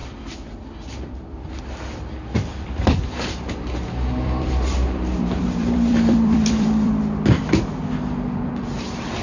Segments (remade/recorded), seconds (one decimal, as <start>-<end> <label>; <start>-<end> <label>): 0.0-1.6 remade; 1.6-2.5 recorded; 2.5-6.9 remade; 6.9-9.2 recorded